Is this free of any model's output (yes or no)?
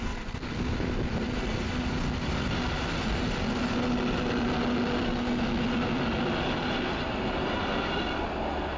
yes